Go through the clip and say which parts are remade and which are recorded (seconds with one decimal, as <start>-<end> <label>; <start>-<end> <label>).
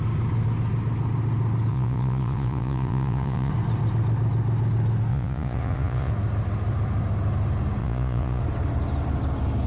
0.0-1.7 recorded; 1.7-3.5 remade; 3.5-5.1 recorded; 5.1-6.1 remade; 6.1-7.8 recorded; 7.8-8.4 remade; 8.4-9.7 recorded